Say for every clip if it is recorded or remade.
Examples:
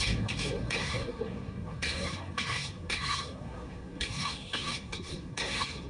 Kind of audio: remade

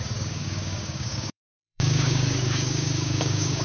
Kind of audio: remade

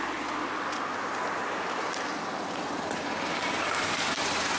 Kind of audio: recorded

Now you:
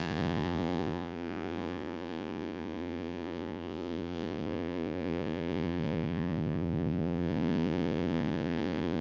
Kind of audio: remade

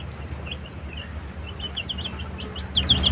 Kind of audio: recorded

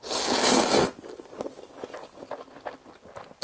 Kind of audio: recorded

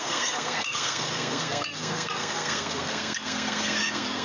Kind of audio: remade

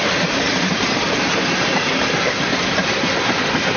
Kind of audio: remade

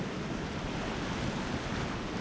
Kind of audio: recorded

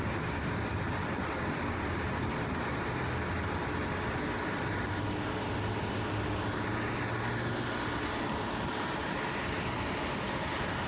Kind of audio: recorded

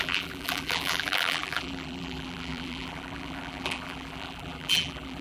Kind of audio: remade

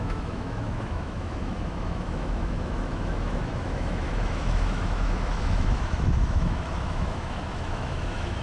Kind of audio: remade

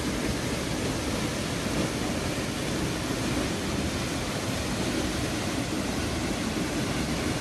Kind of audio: recorded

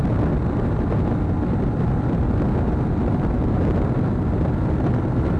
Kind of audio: recorded